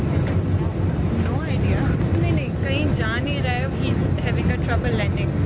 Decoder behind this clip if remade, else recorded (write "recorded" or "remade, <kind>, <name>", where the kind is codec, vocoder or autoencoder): recorded